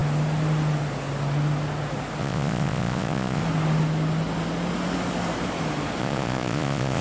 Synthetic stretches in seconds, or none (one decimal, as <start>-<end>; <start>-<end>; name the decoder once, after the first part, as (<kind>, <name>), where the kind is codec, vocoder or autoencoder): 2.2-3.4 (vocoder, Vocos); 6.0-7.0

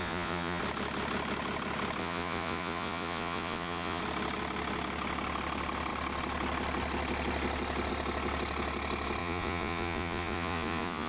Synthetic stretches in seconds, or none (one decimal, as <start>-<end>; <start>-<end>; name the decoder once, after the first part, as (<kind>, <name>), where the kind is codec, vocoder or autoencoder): 0.0-0.6 (vocoder, Vocos); 2.0-4.0; 9.2-11.1

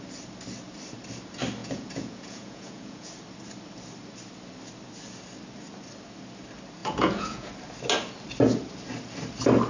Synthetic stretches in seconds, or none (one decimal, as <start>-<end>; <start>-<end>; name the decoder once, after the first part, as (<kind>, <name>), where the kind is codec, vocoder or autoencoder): 1.6-3.1 (vocoder, Vocos); 6.8-7.5

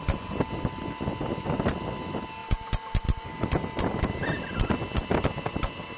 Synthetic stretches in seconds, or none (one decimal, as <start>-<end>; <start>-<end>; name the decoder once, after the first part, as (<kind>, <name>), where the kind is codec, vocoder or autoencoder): none